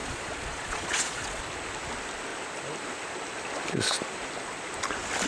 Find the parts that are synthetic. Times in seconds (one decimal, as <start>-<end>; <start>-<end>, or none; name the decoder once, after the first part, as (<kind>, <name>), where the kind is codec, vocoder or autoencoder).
0.0-1.4 (vocoder, Vocos)